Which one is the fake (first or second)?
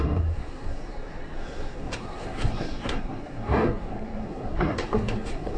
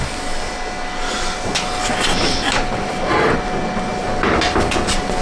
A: first